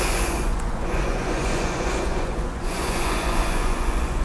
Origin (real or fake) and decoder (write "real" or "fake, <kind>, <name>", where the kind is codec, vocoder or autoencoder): fake, vocoder, Vocos